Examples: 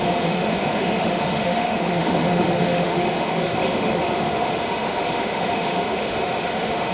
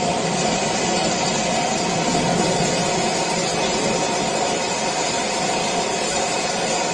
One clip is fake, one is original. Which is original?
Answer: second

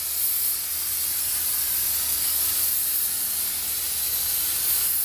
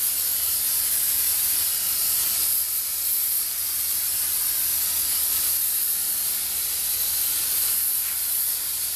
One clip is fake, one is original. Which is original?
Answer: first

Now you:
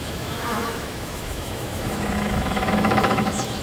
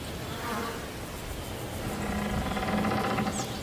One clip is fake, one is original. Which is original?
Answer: second